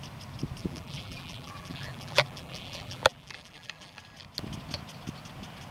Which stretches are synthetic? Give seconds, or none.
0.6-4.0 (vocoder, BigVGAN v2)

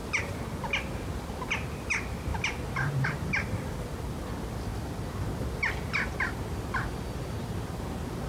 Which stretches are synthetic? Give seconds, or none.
2.3-3.3 (vocoder, BigVGAN v2)

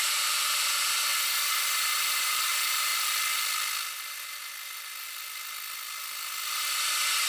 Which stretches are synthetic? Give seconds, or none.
0.0-1.1 (vocoder, BigVGAN v2); 1.8-2.9

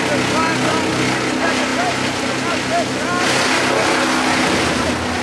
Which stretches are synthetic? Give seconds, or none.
none